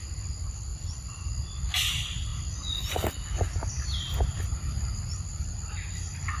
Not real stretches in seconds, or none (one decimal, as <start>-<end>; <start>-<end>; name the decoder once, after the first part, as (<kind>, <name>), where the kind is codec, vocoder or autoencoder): 0.7-1.3 (vocoder, BigVGAN v2)